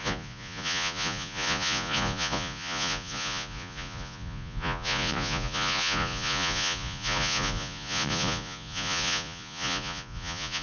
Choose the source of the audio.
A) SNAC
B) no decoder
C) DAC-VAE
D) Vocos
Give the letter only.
D